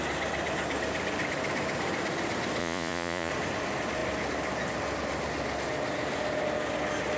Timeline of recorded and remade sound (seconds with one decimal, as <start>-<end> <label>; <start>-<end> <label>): 0.0-2.6 recorded; 2.6-3.3 remade; 3.3-7.2 recorded